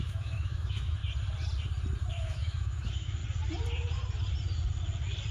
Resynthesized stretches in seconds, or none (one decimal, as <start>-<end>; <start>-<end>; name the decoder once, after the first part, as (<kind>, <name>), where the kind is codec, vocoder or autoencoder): 0.0-1.0 (autoencoder, DAC-VAE); 2.1-3.2